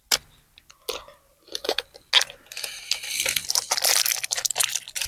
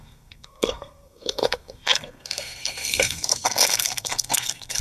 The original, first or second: first